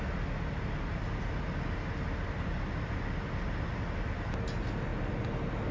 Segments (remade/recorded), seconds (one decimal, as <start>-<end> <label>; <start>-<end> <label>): 0.0-5.7 recorded